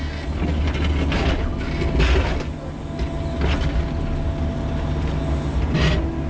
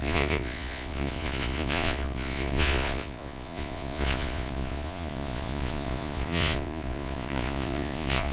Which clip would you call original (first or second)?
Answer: first